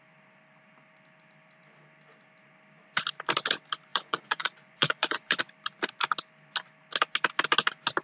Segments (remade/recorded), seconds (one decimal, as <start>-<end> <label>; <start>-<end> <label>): 0.0-3.9 recorded; 3.9-5.4 remade; 5.4-8.0 recorded